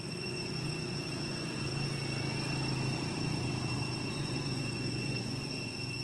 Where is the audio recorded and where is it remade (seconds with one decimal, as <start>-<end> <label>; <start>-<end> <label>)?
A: 0.0-1.7 remade; 1.7-4.1 recorded; 4.1-6.0 remade